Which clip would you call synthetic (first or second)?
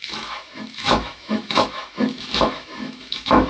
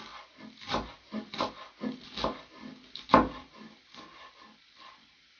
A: first